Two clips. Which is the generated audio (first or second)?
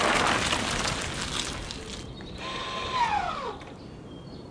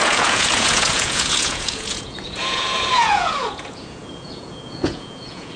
second